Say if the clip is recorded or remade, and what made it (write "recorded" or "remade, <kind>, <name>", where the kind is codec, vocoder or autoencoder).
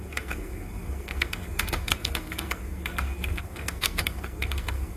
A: remade, codec, SNAC